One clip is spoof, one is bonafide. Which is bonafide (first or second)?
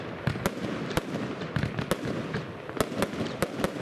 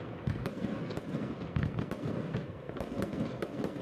first